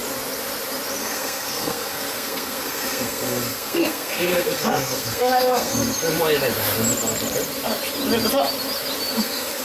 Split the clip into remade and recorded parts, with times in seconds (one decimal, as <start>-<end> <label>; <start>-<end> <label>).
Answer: 0.0-1.0 recorded; 1.0-5.8 remade; 5.8-9.1 recorded; 9.1-9.6 remade